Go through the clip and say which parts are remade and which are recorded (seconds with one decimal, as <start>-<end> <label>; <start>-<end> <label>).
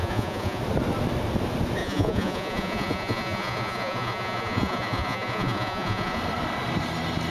0.0-0.6 remade; 0.6-1.8 recorded; 1.8-6.2 remade; 6.2-7.3 recorded